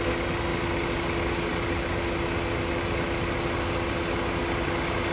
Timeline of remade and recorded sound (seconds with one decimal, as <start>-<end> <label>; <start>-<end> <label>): 0.0-5.1 recorded